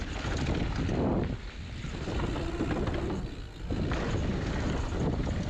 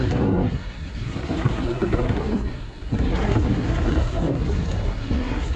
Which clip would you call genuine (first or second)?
first